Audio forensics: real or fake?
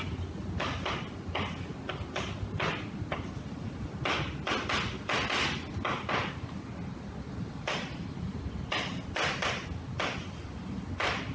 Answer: real